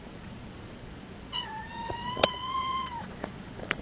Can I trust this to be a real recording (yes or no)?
no